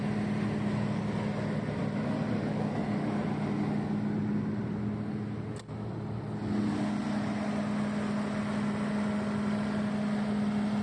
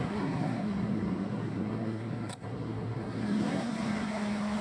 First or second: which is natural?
first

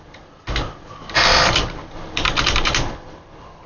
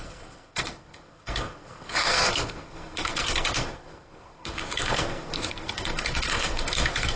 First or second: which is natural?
first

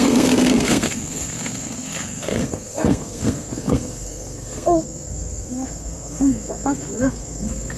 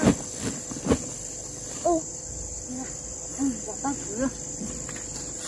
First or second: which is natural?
second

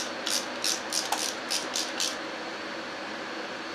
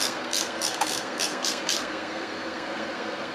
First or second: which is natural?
first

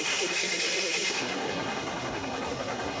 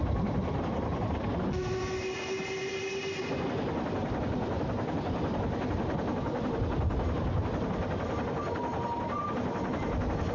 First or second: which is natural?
second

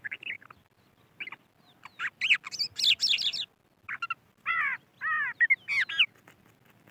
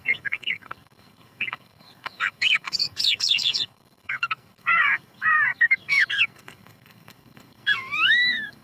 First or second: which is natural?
first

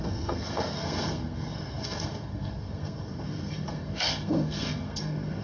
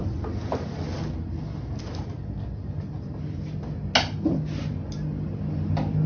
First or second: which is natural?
second